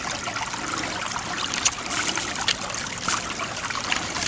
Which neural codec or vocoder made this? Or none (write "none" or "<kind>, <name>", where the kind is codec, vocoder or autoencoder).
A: none